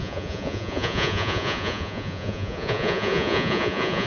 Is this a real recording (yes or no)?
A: no